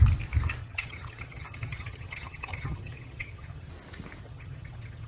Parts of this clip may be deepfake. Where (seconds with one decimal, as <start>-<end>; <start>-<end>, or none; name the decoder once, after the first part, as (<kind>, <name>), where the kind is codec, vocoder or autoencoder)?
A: 0.6-3.7 (vocoder, HiFi-GAN); 4.2-5.1